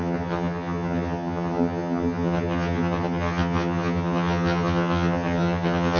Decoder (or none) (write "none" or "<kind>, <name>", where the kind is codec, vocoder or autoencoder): vocoder, HiFi-GAN